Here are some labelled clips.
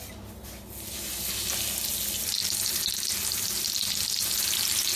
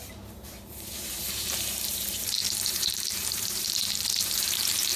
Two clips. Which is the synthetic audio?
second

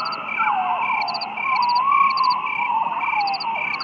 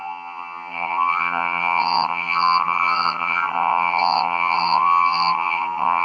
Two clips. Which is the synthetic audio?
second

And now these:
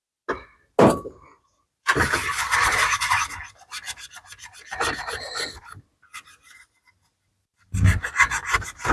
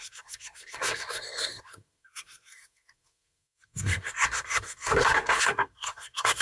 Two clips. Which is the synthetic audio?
second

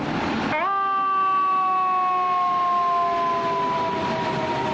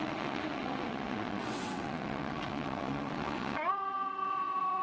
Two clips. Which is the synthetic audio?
second